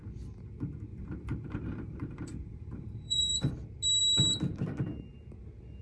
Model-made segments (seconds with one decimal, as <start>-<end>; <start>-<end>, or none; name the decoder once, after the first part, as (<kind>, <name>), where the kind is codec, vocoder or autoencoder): 0.9-3.5 (vocoder, BigVGAN v2)